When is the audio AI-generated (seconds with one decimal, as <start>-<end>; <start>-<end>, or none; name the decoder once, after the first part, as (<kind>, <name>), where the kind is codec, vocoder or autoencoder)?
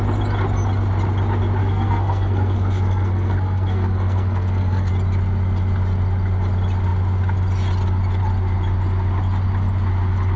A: 1.6-4.9 (codec, SNAC)